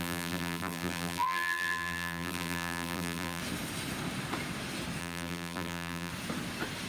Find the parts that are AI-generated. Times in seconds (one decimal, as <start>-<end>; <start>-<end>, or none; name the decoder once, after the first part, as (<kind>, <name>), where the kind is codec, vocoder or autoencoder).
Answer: 0.0-3.4 (vocoder, BigVGAN v2); 5.0-6.1